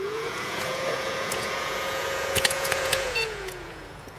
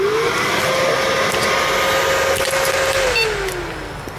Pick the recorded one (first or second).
second